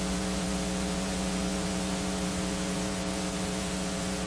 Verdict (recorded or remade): remade